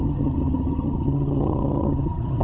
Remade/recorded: remade